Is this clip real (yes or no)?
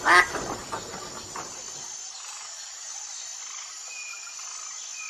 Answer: yes